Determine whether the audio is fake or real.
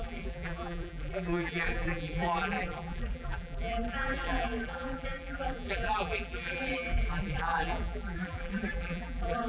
fake